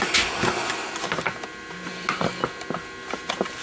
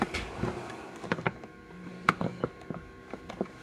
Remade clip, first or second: second